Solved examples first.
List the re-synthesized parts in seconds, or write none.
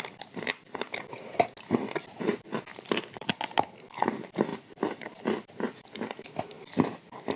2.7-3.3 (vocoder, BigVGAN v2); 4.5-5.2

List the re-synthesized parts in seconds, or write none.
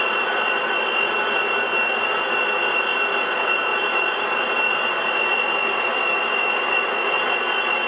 none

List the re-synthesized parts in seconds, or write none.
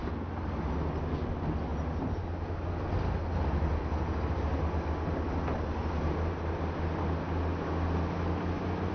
none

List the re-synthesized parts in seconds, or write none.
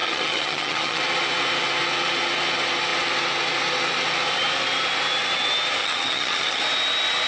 0.0-1.0 (vocoder, HiFi-GAN); 5.8-6.6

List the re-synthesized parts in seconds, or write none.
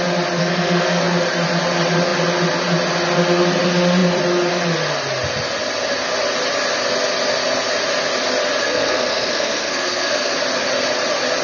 0.4-1.0 (codec, SNAC); 8.6-10.3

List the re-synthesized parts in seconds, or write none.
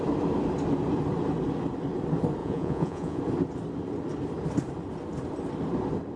2.4-3.2 (vocoder, Vocos)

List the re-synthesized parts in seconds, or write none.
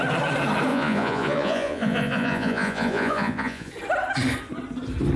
0.7-3.7 (vocoder, Vocos)